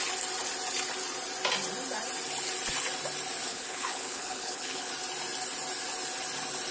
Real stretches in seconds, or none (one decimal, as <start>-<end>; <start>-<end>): 0.0-3.5; 4.9-6.7

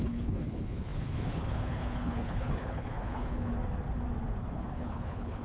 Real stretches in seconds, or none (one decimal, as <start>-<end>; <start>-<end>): 3.5-4.4